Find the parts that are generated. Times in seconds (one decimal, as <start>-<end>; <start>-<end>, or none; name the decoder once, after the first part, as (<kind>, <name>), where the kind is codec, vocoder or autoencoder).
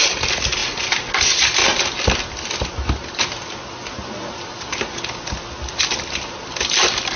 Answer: none